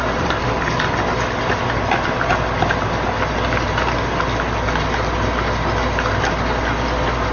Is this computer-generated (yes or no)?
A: no